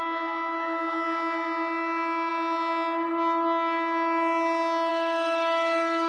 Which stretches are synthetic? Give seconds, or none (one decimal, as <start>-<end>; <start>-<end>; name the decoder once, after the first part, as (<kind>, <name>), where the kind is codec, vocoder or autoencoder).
4.9-6.1 (autoencoder, DAC-VAE)